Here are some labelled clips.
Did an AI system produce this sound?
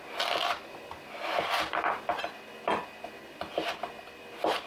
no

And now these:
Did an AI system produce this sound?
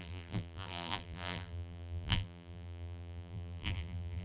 yes